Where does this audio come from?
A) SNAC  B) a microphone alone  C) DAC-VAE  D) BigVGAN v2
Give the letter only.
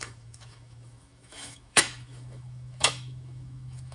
C